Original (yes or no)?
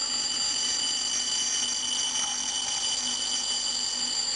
yes